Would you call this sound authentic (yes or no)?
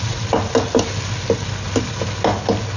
yes